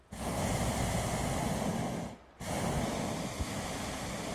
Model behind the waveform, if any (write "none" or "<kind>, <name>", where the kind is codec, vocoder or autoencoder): none